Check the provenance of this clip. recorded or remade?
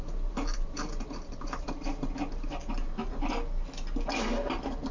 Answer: recorded